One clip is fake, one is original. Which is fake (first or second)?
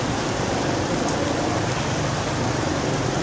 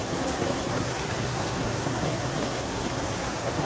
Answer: second